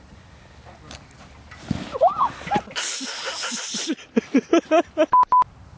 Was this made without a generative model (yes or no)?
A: yes